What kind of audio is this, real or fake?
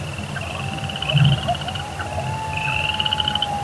real